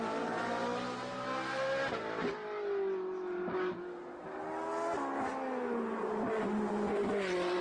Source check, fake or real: real